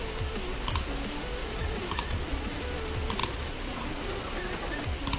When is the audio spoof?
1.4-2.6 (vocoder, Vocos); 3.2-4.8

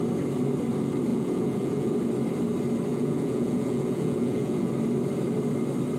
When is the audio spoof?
1.1-1.9 (vocoder, Vocos); 2.9-4.7

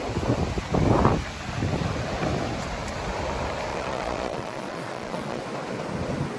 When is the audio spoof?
3.7-5.4 (vocoder, Vocos)

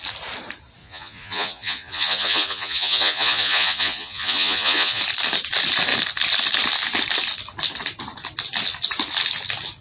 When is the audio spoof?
0.8-5.0 (vocoder, Vocos)